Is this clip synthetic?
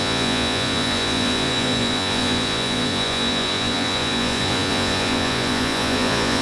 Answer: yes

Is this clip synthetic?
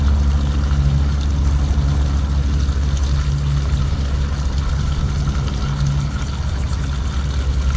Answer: no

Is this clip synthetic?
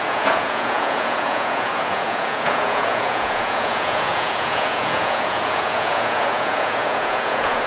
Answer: yes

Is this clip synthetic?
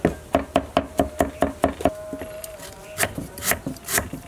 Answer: no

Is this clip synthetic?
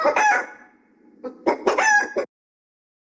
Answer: no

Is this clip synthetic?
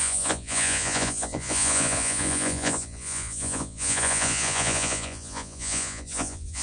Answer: yes